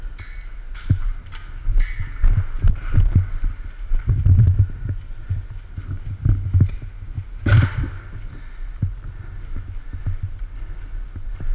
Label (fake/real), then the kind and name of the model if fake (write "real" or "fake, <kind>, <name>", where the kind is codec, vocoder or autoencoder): real